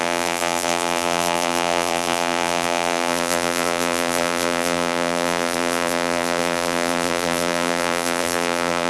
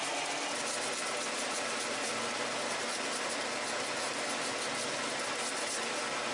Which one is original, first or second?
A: second